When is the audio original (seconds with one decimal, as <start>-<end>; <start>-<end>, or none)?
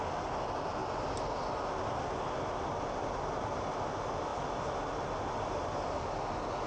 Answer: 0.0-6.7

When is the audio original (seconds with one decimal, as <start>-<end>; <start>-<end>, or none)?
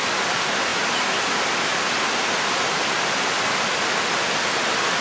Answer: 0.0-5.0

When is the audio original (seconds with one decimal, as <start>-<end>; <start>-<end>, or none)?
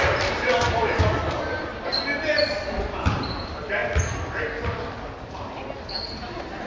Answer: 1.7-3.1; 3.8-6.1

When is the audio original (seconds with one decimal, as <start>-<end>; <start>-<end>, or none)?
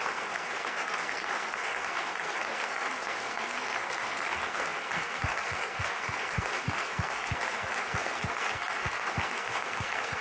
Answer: none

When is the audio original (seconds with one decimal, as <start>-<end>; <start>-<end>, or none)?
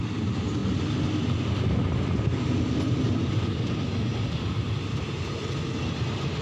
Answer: 0.0-4.1; 5.3-6.4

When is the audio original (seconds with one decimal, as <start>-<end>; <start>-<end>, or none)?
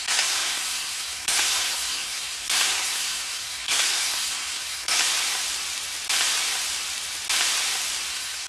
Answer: 5.0-8.1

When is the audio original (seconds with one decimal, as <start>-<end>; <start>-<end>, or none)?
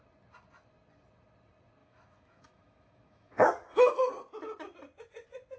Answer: 0.0-1.8; 4.1-5.6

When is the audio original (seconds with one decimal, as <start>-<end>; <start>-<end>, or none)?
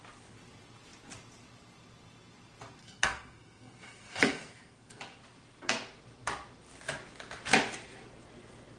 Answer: 0.0-2.8; 5.0-8.8